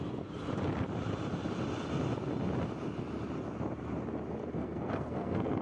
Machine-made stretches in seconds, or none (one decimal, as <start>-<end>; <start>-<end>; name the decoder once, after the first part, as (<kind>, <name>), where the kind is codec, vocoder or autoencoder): 4.4-5.6 (codec, SNAC)